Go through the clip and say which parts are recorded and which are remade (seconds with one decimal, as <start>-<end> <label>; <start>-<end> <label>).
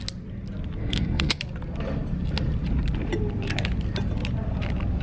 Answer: 0.0-0.8 recorded; 0.8-1.4 remade; 1.4-5.0 recorded